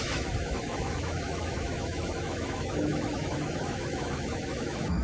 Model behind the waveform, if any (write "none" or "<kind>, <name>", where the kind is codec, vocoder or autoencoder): autoencoder, DAC-VAE